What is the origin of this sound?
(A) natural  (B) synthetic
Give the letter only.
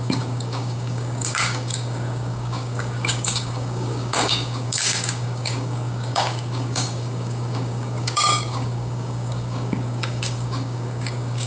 B